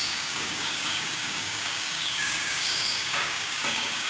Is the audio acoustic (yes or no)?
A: no